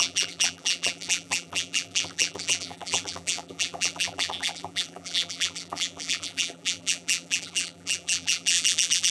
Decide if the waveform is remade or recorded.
remade